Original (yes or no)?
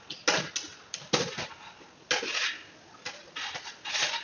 yes